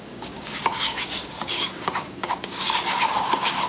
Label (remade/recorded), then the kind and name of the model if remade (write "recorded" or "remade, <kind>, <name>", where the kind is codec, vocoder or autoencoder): remade, codec, DAC